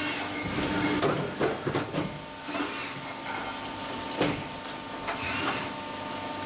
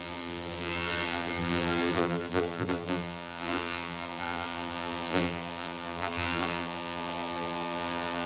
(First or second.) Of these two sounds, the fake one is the second